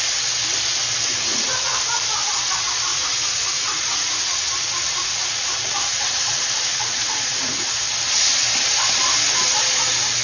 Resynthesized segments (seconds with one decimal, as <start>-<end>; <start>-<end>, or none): 1.1-1.7; 2.9-7.7